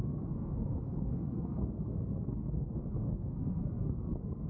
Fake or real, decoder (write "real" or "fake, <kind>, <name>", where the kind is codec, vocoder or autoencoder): fake, codec, SNAC